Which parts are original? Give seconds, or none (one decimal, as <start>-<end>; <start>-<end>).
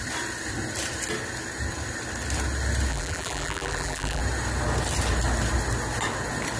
0.0-2.9; 4.2-6.6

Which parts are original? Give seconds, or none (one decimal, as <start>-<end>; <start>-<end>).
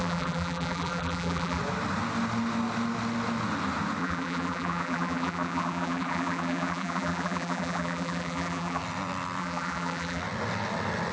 1.6-4.0; 8.8-9.4; 10.2-11.1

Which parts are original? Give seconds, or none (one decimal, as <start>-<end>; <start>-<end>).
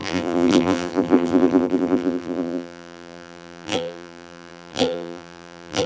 none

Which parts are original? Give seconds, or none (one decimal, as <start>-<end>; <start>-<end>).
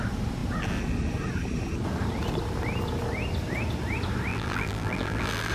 0.0-4.3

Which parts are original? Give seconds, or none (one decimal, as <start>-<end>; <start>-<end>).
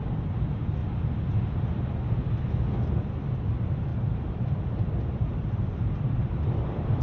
0.8-3.5